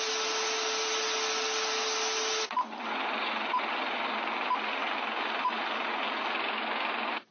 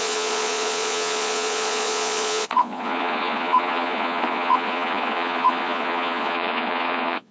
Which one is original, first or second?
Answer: first